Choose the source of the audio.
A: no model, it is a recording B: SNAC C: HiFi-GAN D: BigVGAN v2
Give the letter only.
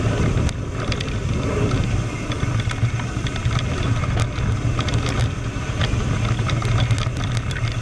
A